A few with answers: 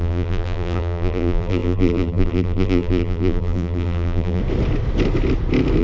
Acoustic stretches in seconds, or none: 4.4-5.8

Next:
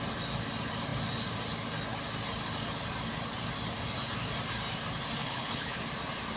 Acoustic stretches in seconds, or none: 0.0-5.2; 5.8-6.4

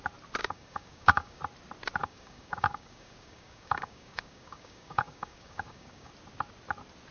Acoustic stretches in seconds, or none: 0.0-0.4; 1.4-2.0; 6.1-7.1